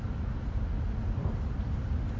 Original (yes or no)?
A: yes